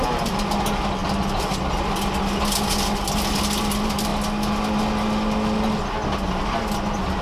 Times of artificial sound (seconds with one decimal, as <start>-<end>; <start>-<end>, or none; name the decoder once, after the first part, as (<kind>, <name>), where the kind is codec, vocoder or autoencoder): none